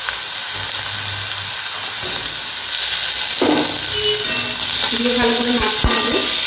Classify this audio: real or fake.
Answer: real